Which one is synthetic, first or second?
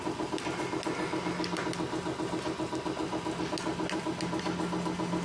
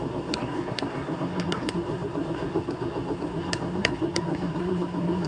second